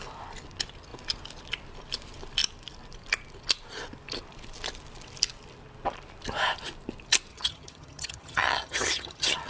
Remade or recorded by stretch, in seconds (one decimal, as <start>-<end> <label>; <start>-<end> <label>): 0.0-7.3 recorded; 7.3-9.5 remade